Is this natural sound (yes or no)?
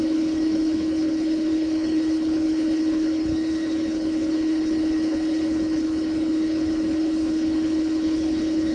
no